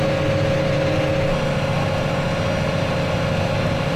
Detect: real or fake real